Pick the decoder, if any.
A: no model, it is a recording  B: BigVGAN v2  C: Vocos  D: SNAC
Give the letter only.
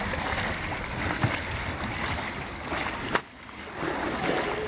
A